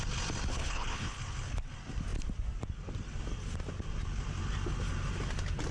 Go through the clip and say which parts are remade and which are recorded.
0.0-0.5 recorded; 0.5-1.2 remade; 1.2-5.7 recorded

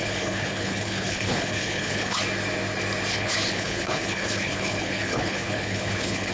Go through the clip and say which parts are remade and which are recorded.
0.0-2.2 remade; 2.2-3.1 recorded; 3.1-6.3 remade

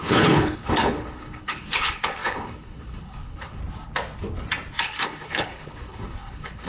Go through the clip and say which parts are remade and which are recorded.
0.0-3.6 remade; 3.6-4.8 recorded; 4.8-6.7 remade

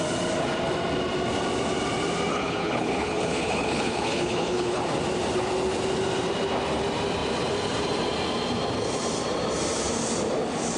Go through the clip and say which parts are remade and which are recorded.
0.0-2.3 recorded; 2.3-4.8 remade; 4.8-10.8 recorded

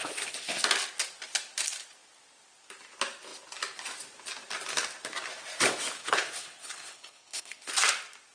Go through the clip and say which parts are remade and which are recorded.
0.0-0.6 remade; 0.6-6.0 recorded; 6.0-7.7 remade; 7.7-8.3 recorded

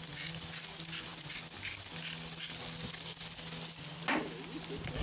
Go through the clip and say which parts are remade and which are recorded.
0.0-5.0 recorded

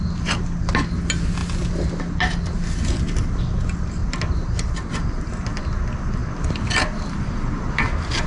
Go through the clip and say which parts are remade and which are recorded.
0.0-8.3 recorded

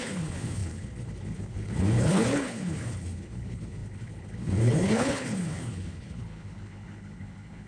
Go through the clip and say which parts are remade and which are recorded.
0.0-7.7 remade